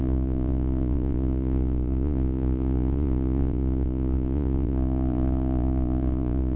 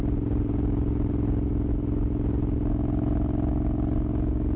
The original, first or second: second